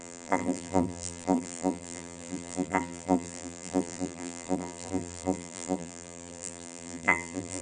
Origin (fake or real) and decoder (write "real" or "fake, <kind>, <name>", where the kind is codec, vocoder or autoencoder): fake, vocoder, BigVGAN v2